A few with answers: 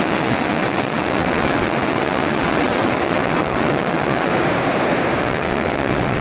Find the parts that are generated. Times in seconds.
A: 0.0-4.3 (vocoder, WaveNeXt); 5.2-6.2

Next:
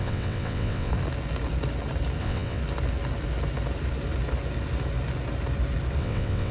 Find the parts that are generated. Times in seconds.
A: 0.0-0.9 (vocoder, WaveNeXt); 2.2-2.6; 6.0-6.5

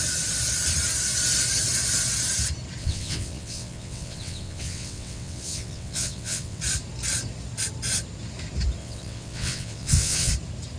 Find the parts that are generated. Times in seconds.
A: 2.8-6.6 (vocoder, WaveNeXt); 8.8-10.3

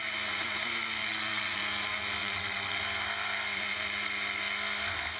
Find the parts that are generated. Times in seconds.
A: 1.0-1.6 (vocoder, WaveNeXt); 2.2-2.8

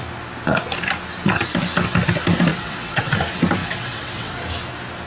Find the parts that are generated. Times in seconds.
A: 2.5-3.1 (vocoder, WaveNeXt); 3.6-4.3